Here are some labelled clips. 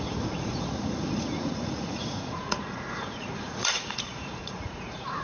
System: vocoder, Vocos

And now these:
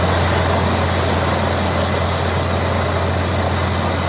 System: none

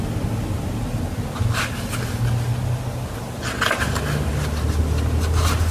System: none